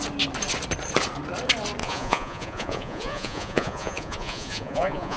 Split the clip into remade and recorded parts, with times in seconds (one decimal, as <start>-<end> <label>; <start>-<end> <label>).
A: 0.0-1.8 recorded; 1.8-5.2 remade